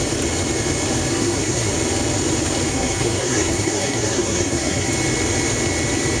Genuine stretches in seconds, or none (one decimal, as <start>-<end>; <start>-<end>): 0.0-1.1; 1.7-2.7; 4.9-6.2